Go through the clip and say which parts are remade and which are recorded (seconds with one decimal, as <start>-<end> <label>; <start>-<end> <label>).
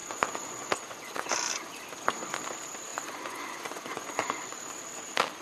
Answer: 0.0-1.3 remade; 1.3-2.9 recorded; 2.9-4.6 remade; 4.6-5.4 recorded